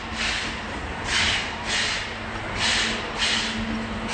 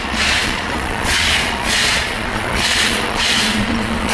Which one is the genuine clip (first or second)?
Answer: first